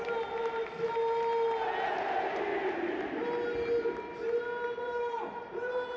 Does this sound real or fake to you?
real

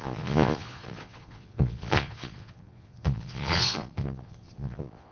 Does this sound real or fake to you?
fake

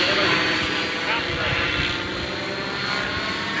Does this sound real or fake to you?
real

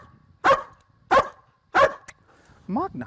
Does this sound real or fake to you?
real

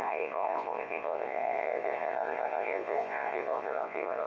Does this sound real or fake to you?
fake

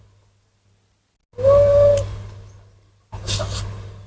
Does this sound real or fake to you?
real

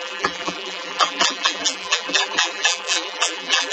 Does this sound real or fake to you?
fake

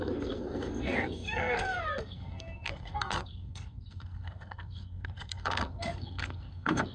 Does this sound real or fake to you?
fake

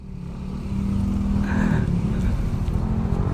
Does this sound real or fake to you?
real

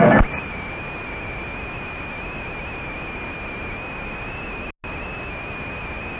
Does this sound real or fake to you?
real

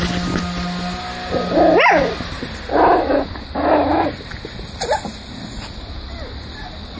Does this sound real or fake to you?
real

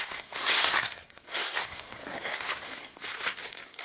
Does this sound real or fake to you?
fake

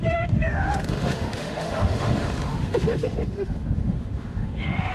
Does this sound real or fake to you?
fake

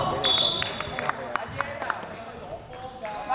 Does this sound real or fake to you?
real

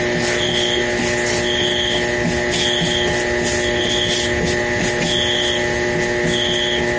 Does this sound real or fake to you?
real